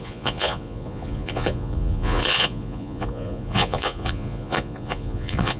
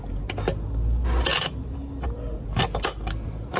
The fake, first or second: first